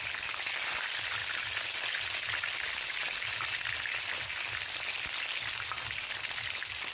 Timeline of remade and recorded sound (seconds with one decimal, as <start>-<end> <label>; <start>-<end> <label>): 0.0-6.9 recorded